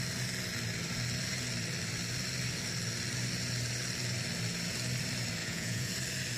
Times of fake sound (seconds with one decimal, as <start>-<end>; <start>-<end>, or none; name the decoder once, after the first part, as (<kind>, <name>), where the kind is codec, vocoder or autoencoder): 5.4-5.9 (vocoder, Vocos)